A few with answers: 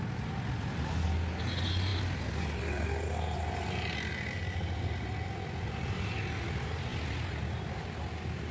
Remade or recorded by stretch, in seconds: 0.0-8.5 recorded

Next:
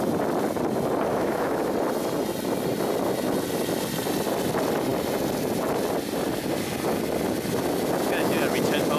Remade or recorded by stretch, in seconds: 0.0-1.1 recorded; 1.1-1.7 remade; 1.7-9.0 recorded

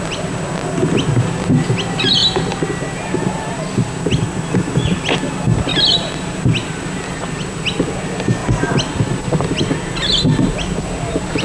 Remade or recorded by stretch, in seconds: 0.0-11.4 recorded

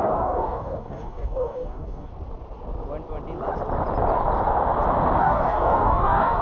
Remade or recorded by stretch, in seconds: 0.0-2.1 remade; 2.1-5.2 recorded; 5.2-6.4 remade

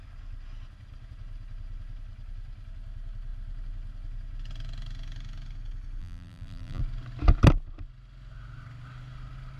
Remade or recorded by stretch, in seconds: 0.0-6.0 recorded; 6.0-6.8 remade; 6.8-9.6 recorded

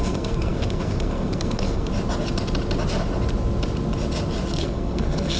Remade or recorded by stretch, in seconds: 0.0-1.9 remade; 1.9-4.6 recorded; 4.6-5.4 remade

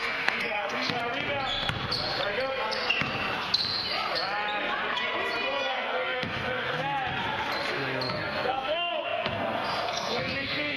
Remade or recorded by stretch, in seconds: 0.0-1.0 remade; 1.0-5.6 recorded; 5.6-7.0 remade; 7.0-8.1 recorded; 8.1-10.8 remade

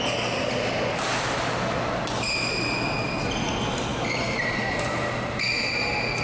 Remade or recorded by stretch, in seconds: 0.0-6.2 recorded